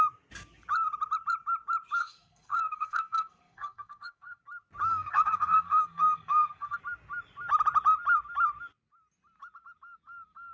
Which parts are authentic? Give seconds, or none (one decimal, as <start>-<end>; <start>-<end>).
0.0-2.0; 4.4-4.9; 6.8-10.5